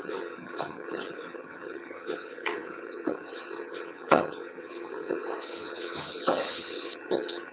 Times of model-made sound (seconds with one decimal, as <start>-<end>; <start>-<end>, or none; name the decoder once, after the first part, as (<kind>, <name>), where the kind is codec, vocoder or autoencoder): 0.0-7.5 (vocoder, HiFi-GAN)